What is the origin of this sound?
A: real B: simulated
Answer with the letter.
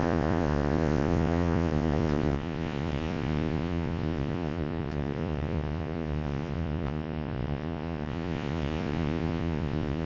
B